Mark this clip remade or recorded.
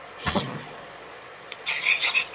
remade